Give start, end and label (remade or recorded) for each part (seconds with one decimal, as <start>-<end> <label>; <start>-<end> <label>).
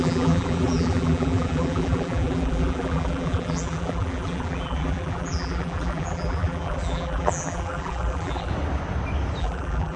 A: 0.0-8.5 remade; 8.5-9.4 recorded; 9.4-10.0 remade